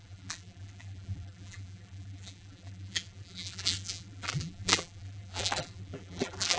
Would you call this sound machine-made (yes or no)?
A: yes